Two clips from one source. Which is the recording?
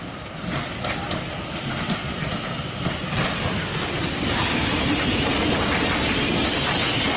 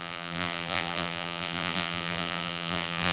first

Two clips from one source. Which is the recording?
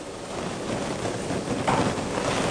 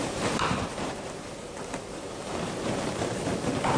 first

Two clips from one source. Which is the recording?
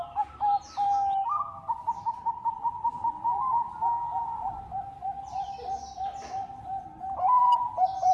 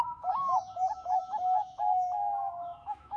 first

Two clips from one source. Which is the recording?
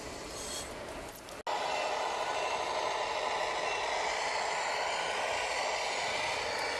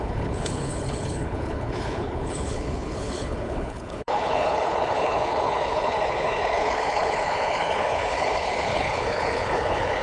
first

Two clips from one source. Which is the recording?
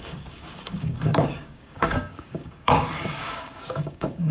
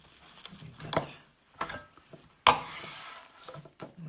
second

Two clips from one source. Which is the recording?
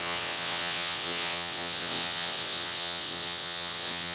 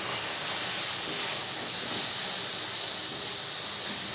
second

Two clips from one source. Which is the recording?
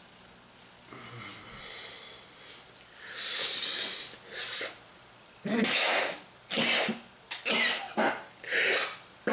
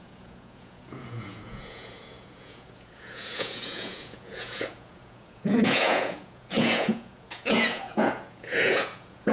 first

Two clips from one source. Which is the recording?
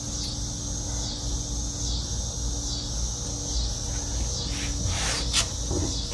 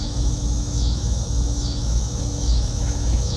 first